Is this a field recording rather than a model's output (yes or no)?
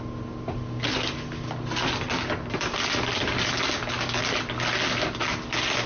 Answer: yes